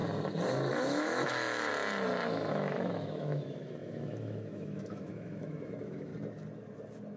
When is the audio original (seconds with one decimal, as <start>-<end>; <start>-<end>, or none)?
0.0-0.7; 1.7-2.5; 6.1-7.2